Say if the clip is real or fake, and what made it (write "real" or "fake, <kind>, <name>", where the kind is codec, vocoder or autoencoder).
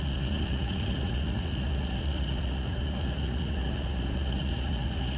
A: fake, vocoder, Vocos